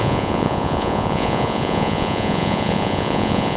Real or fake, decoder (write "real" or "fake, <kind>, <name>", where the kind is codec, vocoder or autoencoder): fake, vocoder, Vocos